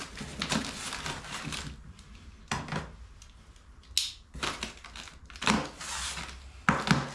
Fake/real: real